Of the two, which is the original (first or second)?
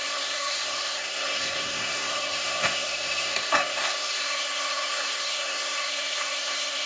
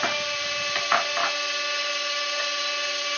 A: second